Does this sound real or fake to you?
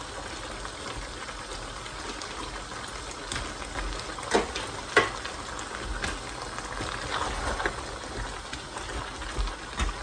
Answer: real